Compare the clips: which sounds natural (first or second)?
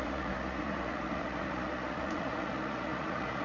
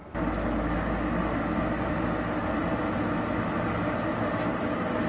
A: second